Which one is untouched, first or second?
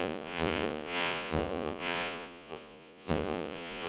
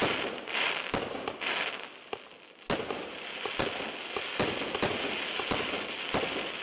second